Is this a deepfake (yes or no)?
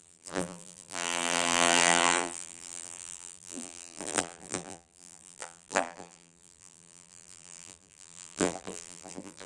yes